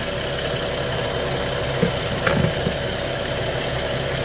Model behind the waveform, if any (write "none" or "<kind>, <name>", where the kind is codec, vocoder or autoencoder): none